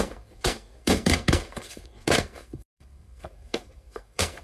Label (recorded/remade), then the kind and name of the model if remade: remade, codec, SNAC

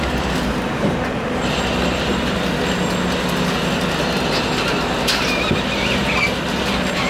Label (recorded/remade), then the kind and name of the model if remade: recorded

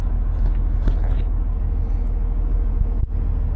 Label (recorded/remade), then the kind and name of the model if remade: recorded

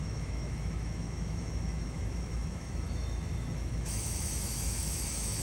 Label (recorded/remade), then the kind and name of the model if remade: remade, autoencoder, DAC-VAE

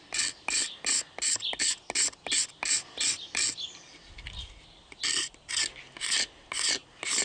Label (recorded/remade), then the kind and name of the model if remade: recorded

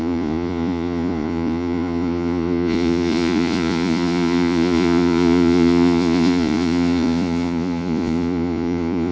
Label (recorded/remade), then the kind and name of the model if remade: remade, vocoder, Vocos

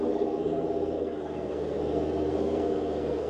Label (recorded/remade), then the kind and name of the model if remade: remade, codec, SNAC